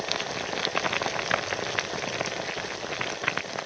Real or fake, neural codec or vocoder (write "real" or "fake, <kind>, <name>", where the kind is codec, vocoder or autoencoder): real